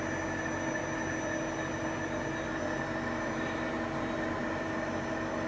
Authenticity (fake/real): real